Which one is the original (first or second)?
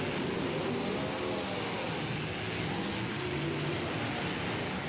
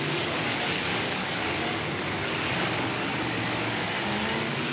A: first